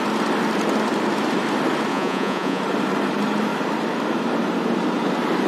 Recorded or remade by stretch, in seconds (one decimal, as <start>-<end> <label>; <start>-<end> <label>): 0.0-1.9 recorded; 1.9-2.6 remade; 2.6-5.5 recorded